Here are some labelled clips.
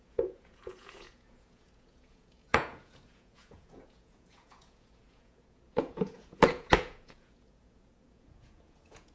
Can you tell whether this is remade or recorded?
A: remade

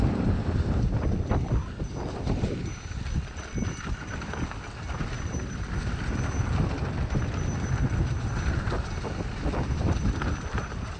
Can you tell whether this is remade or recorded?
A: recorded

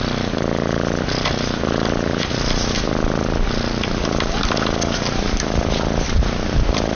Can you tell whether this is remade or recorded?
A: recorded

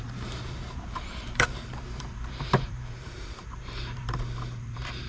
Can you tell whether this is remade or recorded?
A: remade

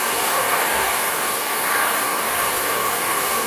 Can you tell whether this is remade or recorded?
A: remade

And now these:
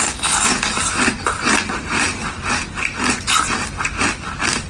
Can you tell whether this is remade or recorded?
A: recorded